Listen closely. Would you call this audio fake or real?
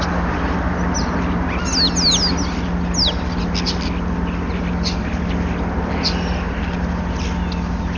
real